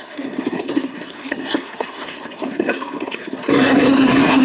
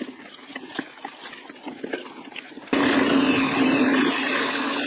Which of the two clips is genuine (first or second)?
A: second